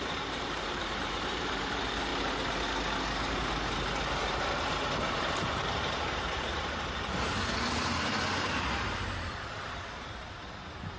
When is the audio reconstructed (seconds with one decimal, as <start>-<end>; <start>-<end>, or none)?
0.0-2.1; 5.0-11.0